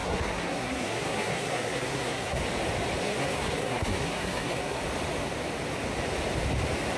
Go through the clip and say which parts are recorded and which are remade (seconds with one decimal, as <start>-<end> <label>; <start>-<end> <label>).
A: 0.0-2.4 remade; 2.4-3.0 recorded; 3.0-4.8 remade; 4.8-7.0 recorded